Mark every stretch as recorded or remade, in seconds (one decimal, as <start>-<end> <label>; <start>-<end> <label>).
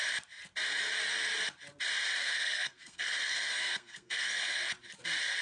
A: 0.0-2.2 recorded; 2.2-4.7 remade; 4.7-5.4 recorded